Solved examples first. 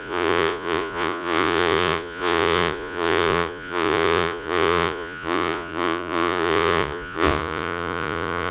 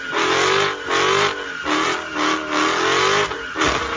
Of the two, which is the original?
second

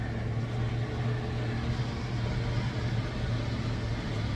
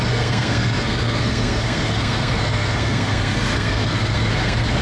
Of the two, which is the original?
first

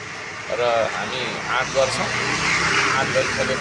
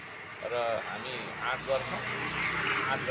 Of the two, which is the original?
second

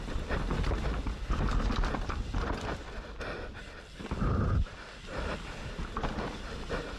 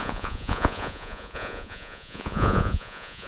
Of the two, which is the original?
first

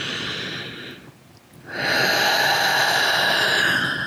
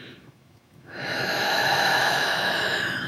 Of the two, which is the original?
first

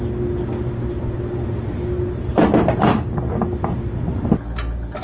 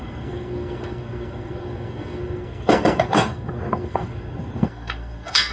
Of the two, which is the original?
first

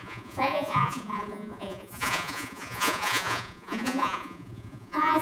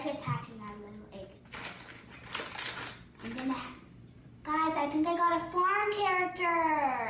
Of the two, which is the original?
second